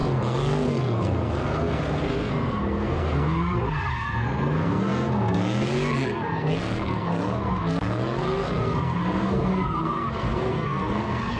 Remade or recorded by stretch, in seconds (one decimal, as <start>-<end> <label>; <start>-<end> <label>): 0.0-11.4 remade